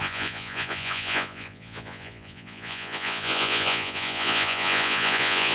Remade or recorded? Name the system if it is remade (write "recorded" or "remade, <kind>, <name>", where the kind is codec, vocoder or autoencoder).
remade, vocoder, Vocos